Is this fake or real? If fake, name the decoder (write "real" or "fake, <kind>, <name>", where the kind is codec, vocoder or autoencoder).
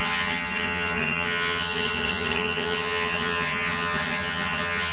fake, vocoder, HiFi-GAN